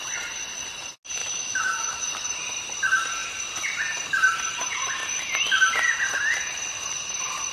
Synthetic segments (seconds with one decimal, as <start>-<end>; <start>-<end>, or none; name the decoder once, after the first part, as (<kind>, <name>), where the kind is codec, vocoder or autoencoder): 1.2-2.0 (autoencoder, DAC-VAE)